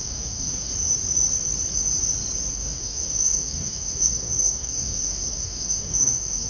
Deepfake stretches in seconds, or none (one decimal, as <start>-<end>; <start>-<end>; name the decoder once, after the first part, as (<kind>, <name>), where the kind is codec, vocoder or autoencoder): 0.0-0.7 (codec, DAC); 2.5-6.5